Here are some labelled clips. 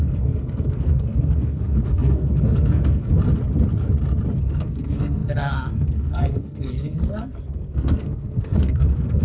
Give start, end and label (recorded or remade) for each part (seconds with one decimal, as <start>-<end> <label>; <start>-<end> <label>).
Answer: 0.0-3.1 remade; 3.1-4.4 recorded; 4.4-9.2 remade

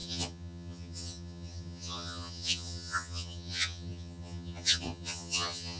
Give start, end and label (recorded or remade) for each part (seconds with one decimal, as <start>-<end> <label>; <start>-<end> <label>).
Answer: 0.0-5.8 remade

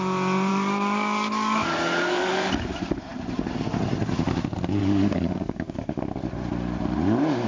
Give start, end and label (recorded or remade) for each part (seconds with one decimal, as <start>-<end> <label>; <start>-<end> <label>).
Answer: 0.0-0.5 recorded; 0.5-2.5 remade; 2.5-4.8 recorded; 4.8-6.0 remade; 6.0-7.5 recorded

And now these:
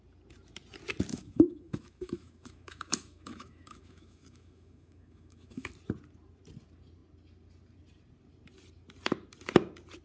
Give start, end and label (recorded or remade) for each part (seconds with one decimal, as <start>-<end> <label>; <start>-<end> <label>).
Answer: 0.0-1.1 recorded; 1.1-5.7 remade; 5.7-10.0 recorded

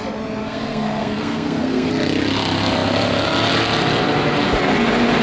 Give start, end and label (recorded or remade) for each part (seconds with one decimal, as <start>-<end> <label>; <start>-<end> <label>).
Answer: 0.0-0.4 recorded; 0.4-1.9 remade; 1.9-5.2 recorded

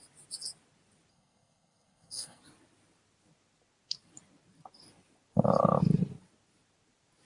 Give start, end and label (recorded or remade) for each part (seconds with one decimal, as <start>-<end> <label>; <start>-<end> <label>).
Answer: 0.0-1.1 recorded; 1.1-2.4 remade; 2.4-7.2 recorded